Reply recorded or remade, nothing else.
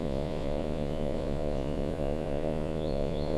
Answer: remade